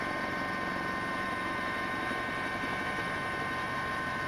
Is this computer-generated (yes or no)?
yes